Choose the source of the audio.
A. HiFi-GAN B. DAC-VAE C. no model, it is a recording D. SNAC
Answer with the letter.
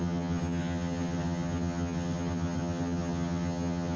A